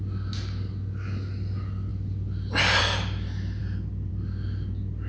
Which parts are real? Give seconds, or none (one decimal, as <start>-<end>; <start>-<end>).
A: 0.0-5.1